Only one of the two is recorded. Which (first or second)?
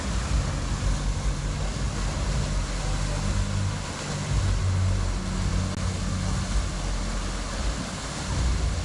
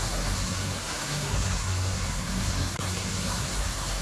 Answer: first